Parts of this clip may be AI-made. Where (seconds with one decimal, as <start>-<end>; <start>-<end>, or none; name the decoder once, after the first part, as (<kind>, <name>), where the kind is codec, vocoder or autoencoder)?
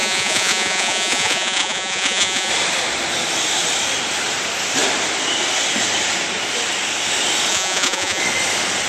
0.0-2.5 (vocoder, Vocos); 7.5-8.2